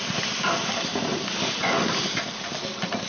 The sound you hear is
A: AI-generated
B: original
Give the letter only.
B